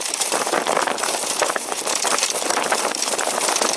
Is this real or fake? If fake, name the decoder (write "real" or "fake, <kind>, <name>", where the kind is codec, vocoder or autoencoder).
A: fake, vocoder, BigVGAN v2